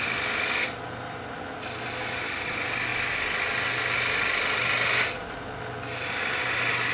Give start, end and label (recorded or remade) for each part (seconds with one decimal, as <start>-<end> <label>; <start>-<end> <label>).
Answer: 0.0-6.9 recorded